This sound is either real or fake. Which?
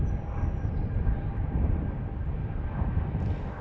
real